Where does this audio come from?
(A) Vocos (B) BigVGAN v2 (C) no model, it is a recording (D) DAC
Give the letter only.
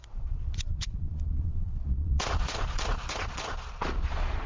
A